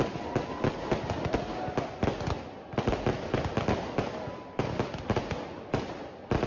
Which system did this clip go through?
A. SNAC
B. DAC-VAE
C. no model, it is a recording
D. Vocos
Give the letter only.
C